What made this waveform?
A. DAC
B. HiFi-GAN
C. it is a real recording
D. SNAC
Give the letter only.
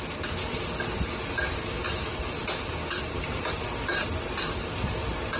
C